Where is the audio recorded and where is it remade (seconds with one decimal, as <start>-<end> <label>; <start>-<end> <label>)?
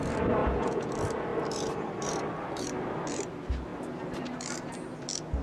0.0-0.4 recorded; 0.4-0.9 remade; 0.9-5.4 recorded